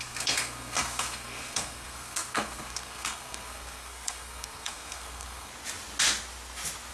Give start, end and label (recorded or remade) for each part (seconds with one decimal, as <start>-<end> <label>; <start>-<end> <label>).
0.0-5.5 remade; 5.5-6.9 recorded